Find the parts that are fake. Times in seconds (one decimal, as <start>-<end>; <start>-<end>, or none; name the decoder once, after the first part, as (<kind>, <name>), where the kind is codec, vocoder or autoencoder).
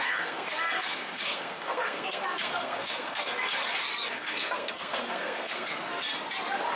0.0-3.6 (codec, SNAC); 4.1-5.9